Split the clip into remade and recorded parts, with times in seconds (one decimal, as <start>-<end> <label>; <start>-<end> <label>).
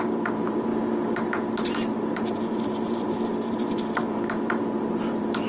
0.0-0.7 remade; 0.7-1.9 recorded; 1.9-5.5 remade